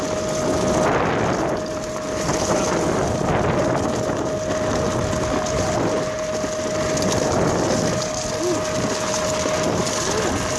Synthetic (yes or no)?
no